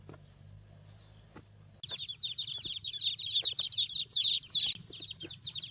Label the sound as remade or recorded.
recorded